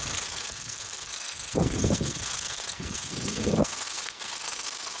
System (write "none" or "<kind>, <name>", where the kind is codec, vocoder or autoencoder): codec, SNAC